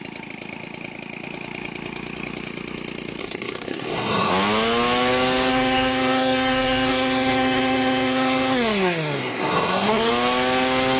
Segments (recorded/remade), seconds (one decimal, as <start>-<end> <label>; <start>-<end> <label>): 0.0-3.2 recorded; 3.2-4.3 remade; 4.3-5.5 recorded; 5.5-10.1 remade; 10.1-11.0 recorded